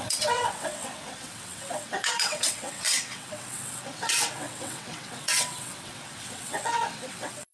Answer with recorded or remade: remade